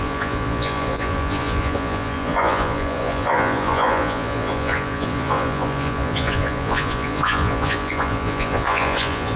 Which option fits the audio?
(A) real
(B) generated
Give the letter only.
B